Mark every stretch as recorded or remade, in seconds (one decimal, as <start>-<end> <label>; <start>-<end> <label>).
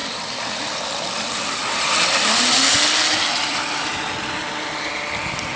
0.0-5.6 recorded